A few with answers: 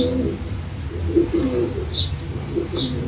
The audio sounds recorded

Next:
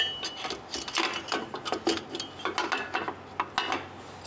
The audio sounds recorded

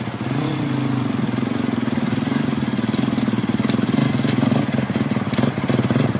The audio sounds recorded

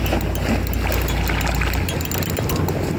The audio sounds recorded